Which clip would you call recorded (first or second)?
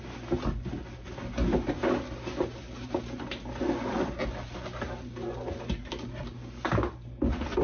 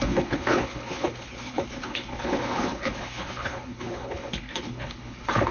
first